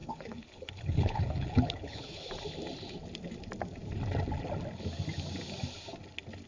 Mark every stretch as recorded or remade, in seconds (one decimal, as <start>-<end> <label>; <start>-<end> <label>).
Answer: 0.0-2.3 remade; 2.3-6.5 recorded